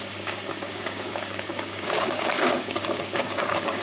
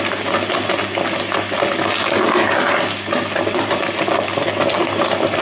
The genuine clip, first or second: second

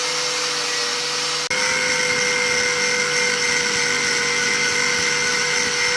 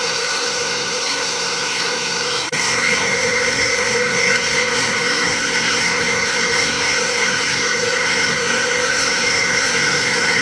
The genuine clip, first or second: first